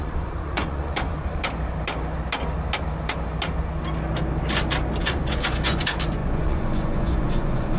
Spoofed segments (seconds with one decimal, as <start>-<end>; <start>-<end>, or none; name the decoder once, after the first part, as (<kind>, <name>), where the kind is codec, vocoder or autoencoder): 0.0-1.4 (vocoder, Vocos); 5.0-7.8